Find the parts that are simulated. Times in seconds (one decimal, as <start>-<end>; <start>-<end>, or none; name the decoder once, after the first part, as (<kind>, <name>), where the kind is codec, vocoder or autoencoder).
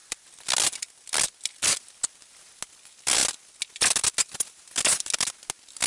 none